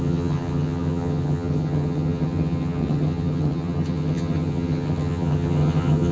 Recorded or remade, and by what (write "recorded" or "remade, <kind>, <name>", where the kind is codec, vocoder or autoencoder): remade, vocoder, HiFi-GAN